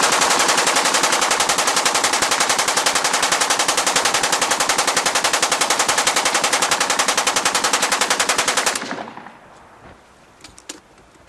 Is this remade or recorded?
recorded